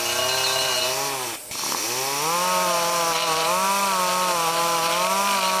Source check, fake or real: real